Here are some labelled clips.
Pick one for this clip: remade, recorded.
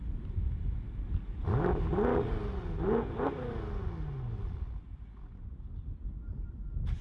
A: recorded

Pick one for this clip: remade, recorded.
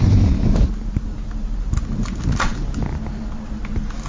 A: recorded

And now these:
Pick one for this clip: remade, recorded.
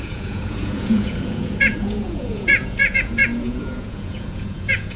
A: remade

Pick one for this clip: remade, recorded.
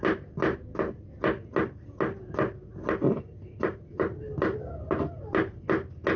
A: recorded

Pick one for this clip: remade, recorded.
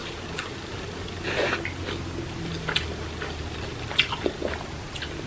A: recorded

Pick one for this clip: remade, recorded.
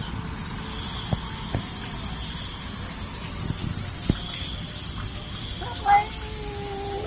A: recorded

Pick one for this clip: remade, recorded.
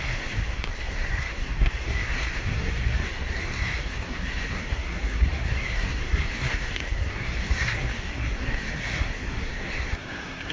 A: remade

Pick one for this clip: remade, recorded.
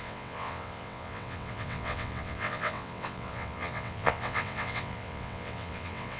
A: remade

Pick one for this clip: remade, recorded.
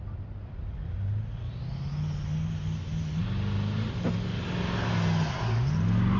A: recorded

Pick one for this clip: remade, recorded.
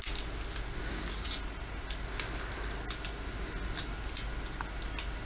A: recorded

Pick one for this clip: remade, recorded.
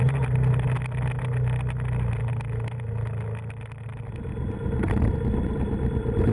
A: recorded